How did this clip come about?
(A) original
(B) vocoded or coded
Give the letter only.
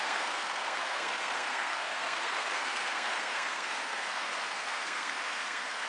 B